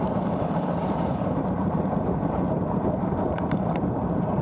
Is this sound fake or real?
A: fake